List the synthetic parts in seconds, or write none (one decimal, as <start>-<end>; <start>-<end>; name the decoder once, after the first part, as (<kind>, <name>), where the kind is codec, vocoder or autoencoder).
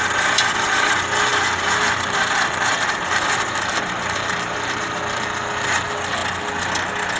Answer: 1.3-5.0 (vocoder, BigVGAN v2)